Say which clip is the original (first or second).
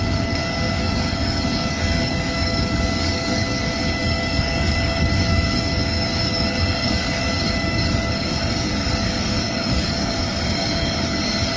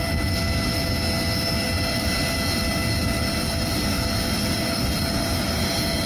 second